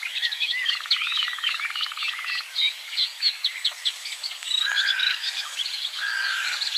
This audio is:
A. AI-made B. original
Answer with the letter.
A